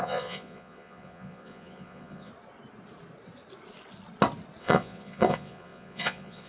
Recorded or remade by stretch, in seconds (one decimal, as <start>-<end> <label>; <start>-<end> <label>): 0.0-2.3 remade; 2.3-4.6 recorded; 4.6-6.5 remade